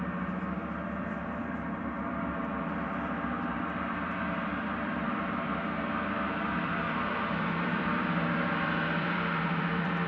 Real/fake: fake